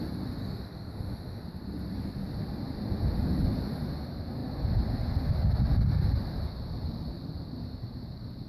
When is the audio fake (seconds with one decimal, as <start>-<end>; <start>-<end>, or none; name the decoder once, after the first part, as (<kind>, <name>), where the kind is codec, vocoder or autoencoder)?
0.4-1.4 (autoencoder, DAC-VAE)